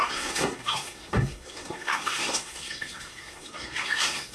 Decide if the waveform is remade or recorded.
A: remade